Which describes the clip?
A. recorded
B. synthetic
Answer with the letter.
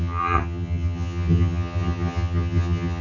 B